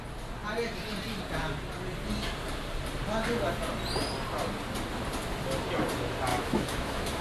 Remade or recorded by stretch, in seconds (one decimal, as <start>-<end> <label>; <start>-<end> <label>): 0.0-6.3 recorded; 6.3-7.2 remade